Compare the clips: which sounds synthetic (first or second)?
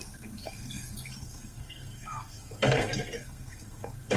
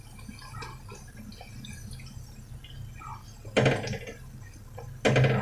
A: first